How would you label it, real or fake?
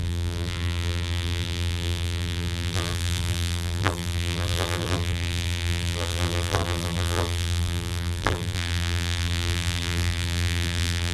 fake